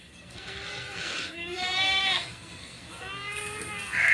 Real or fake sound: fake